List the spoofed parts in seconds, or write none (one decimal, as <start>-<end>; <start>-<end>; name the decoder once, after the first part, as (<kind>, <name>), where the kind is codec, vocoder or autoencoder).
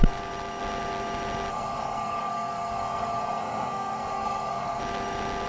1.5-4.8 (codec, SNAC)